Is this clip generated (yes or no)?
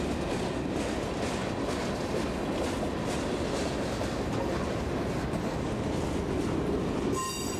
no